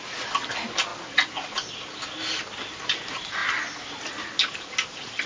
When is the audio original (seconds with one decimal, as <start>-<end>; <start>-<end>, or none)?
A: 0.0-5.3

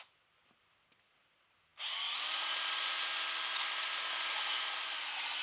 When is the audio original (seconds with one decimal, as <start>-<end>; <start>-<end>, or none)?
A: 0.0-5.4

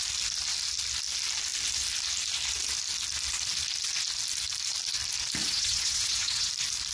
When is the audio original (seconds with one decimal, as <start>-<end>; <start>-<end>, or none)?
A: 0.0-5.4; 6.5-6.9

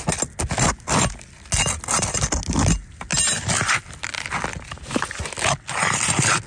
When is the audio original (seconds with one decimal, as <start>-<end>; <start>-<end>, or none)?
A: 0.0-6.5